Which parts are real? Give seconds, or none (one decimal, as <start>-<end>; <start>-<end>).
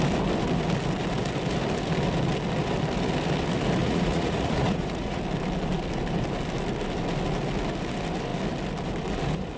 0.0-3.8; 5.2-9.6